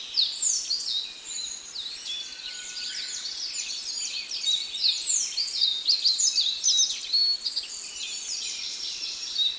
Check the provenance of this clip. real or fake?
real